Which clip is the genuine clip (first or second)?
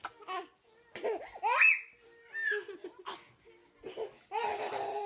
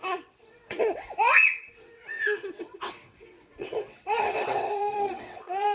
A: first